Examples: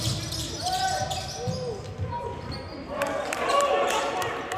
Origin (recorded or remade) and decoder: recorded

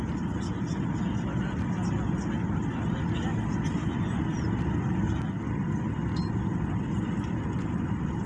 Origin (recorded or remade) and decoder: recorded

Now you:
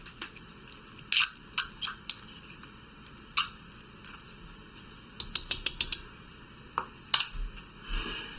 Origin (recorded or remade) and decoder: recorded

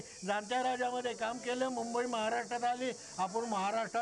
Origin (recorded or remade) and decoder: recorded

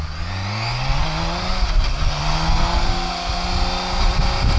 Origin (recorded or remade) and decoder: recorded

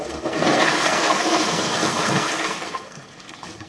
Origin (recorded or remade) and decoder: remade, codec, SNAC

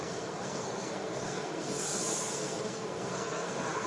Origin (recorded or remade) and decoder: remade, codec, SNAC